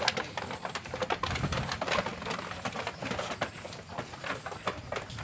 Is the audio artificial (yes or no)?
no